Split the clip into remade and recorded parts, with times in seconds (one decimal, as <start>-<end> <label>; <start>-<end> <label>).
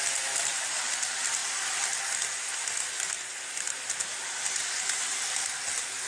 0.0-6.1 recorded